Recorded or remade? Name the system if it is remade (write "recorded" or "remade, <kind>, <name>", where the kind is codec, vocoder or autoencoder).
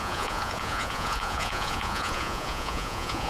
remade, vocoder, Vocos